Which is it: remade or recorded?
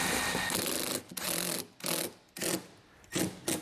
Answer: recorded